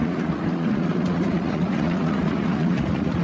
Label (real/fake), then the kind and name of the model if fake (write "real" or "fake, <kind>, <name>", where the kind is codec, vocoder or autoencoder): fake, vocoder, Vocos